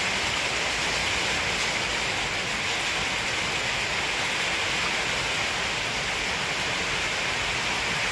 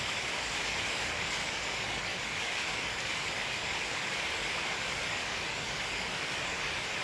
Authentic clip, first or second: first